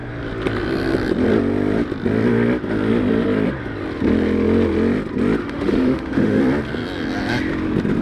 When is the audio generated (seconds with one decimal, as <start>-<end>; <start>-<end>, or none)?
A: 5.4-6.4